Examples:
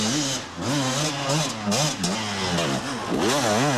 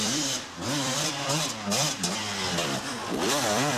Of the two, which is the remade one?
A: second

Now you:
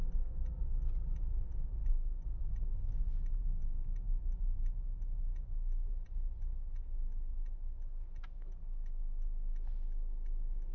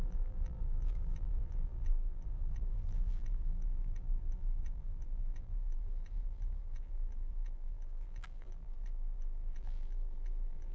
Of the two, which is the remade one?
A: second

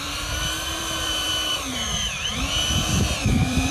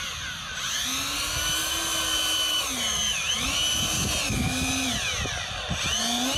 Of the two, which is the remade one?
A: first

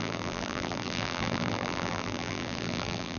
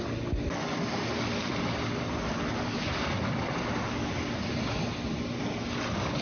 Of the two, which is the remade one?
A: first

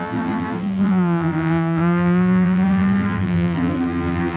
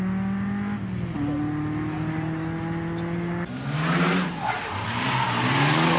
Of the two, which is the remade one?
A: first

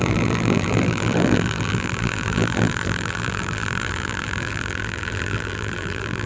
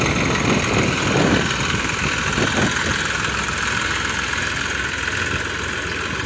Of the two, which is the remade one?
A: first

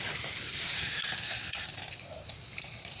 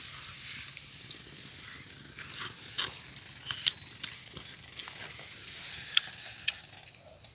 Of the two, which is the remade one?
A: first